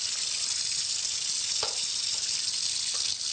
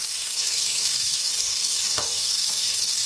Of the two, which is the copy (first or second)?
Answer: second